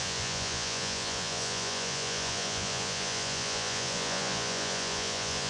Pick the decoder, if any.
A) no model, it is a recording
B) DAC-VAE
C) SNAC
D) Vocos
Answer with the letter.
D